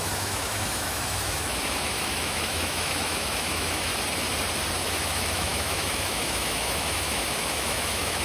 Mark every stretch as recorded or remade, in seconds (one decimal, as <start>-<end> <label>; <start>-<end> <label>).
0.0-3.9 remade; 3.9-4.8 recorded; 4.8-8.2 remade